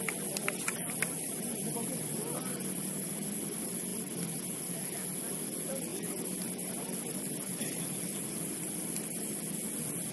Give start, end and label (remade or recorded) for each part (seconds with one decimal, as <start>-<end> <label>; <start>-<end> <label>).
0.0-5.9 recorded; 5.9-9.2 remade; 9.2-10.1 recorded